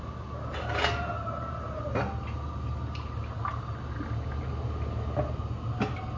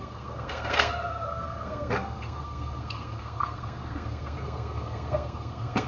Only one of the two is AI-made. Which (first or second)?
second